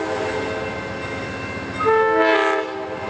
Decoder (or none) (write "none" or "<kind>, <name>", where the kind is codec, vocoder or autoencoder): none